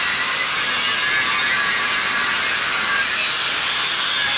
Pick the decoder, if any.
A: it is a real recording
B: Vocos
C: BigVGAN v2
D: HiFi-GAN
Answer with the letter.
C